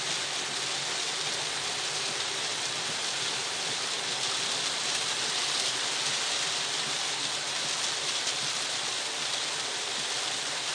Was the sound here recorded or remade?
recorded